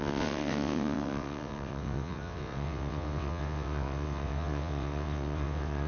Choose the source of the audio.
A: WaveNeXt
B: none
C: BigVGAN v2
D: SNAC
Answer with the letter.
A